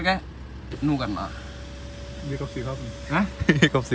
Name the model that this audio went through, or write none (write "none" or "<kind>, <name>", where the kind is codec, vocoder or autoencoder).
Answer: none